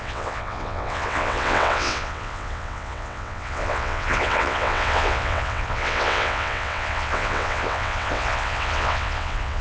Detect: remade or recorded remade